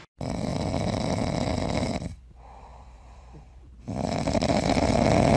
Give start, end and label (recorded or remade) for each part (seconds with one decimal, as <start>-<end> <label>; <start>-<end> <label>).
0.0-0.5 recorded; 0.5-2.2 remade; 2.2-2.7 recorded; 2.7-5.4 remade